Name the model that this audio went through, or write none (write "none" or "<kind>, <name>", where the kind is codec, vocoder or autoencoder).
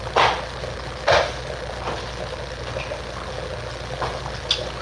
none